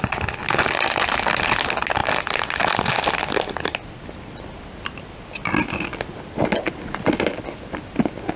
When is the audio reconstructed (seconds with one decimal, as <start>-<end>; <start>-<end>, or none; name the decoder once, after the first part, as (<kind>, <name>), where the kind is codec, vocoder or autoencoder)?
none